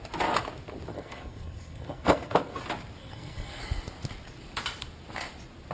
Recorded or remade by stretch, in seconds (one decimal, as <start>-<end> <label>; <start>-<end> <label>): 0.0-0.9 recorded; 0.9-2.6 remade; 2.6-3.0 recorded; 3.0-3.6 remade; 3.6-5.7 recorded